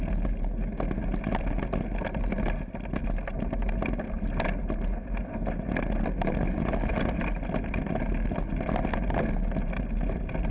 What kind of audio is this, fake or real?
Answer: real